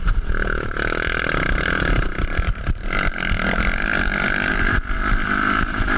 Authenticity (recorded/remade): recorded